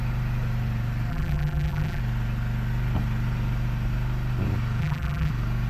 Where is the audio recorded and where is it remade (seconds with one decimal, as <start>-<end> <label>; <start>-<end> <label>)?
0.0-1.1 recorded; 1.1-2.0 remade; 2.0-4.8 recorded; 4.8-5.3 remade; 5.3-5.7 recorded